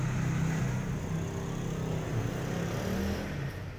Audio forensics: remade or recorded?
recorded